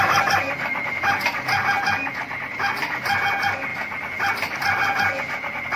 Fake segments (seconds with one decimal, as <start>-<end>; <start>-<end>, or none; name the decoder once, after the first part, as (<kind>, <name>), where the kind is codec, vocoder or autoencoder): none